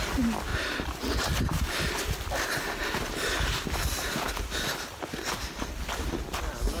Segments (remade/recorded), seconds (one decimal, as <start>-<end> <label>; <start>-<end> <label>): 0.0-0.5 recorded; 0.5-1.9 remade; 1.9-6.8 recorded